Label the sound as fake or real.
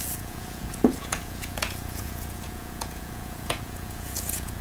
fake